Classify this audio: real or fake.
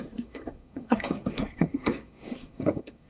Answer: fake